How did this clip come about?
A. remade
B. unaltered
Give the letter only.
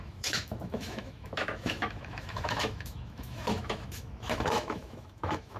A